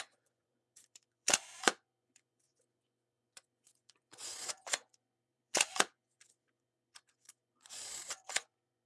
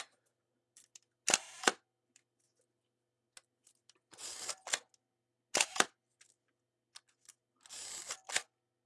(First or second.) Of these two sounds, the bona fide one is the second